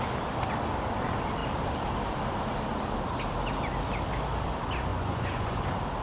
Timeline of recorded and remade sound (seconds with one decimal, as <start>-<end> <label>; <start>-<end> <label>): 0.0-4.9 recorded; 4.9-5.6 remade; 5.6-6.0 recorded